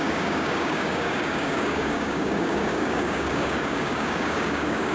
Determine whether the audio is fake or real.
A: fake